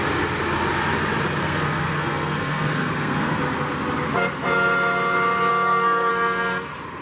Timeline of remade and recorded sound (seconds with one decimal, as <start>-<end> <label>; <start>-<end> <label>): 0.0-1.4 recorded; 1.4-3.4 remade; 3.4-5.5 recorded; 5.5-6.1 remade; 6.1-7.0 recorded